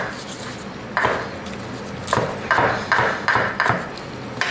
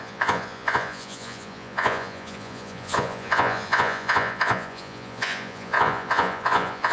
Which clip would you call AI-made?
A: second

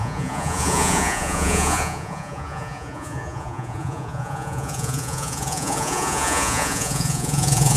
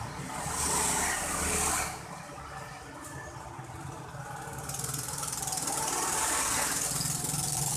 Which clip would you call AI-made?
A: first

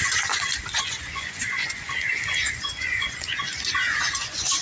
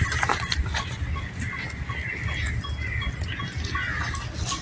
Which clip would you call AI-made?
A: first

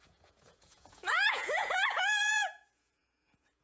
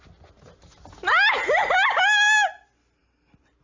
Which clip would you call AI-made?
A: first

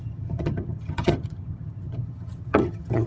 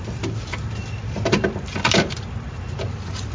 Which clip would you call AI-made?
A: first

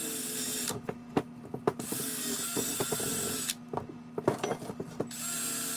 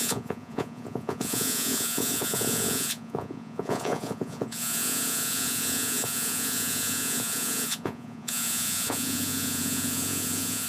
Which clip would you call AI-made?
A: second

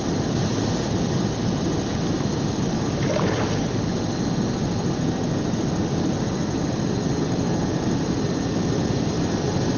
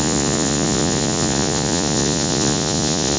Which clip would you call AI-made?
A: second